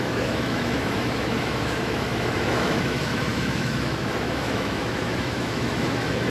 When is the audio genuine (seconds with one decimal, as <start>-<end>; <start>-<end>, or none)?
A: none